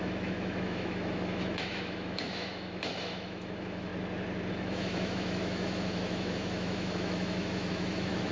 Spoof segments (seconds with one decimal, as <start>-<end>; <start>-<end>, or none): 0.0-3.9; 4.5-8.3